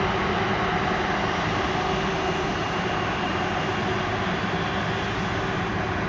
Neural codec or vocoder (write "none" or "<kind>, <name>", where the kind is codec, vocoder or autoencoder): none